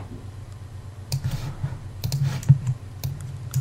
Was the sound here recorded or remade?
recorded